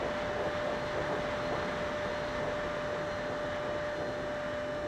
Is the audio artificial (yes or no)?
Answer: no